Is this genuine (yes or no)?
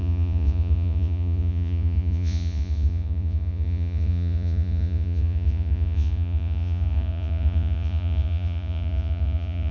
no